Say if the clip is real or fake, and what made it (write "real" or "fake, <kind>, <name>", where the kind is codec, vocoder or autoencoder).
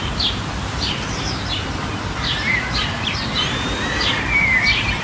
fake, vocoder, BigVGAN v2